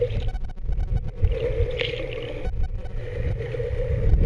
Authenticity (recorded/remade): recorded